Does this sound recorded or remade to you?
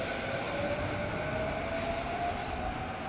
recorded